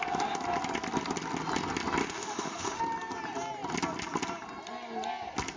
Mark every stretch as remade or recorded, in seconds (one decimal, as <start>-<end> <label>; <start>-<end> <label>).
0.0-2.0 recorded; 2.0-2.8 remade; 2.8-5.6 recorded